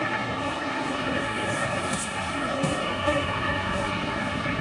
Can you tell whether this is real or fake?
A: fake